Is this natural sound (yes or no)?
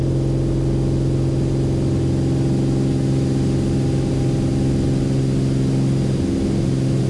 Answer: yes